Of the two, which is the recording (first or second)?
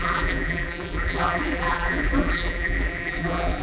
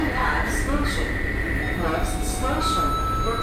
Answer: second